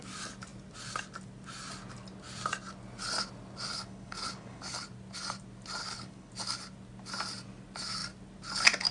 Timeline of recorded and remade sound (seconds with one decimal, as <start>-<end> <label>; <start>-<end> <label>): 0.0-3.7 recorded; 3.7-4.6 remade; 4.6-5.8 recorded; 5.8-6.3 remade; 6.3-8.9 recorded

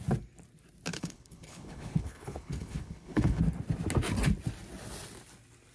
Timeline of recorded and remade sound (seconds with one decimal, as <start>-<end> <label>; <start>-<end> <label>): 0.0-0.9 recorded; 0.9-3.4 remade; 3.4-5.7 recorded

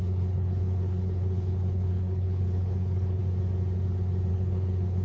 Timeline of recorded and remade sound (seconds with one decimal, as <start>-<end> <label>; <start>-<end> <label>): 0.0-3.2 remade; 3.2-4.3 recorded; 4.3-5.0 remade

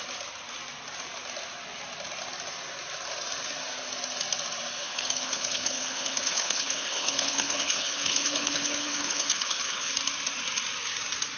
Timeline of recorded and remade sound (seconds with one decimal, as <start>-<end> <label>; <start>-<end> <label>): 0.0-4.8 recorded; 4.8-9.9 remade; 9.9-11.4 recorded

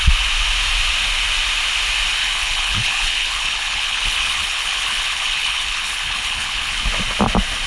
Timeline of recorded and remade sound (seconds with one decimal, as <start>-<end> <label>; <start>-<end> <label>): 0.0-2.2 recorded; 2.2-6.8 remade; 6.8-7.7 recorded

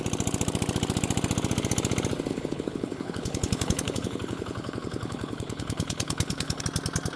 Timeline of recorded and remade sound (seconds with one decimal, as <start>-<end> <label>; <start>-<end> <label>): 0.0-2.3 recorded; 2.3-6.6 remade; 6.6-7.2 recorded

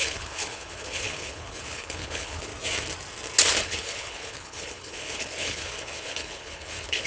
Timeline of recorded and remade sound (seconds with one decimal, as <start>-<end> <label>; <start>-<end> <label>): 0.0-2.5 remade; 2.5-3.6 recorded; 3.6-7.1 remade